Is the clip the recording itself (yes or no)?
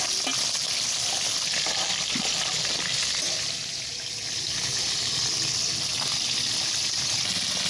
yes